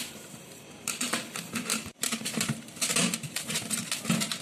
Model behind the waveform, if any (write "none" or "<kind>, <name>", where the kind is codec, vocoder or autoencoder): none